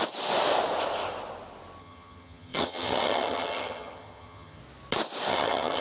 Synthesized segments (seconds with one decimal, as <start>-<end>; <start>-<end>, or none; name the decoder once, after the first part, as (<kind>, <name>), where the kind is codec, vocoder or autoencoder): 1.8-4.6 (vocoder, HiFi-GAN); 5.3-5.8